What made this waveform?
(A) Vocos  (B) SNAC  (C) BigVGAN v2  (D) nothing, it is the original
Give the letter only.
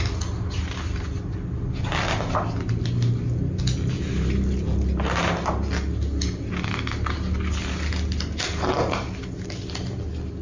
D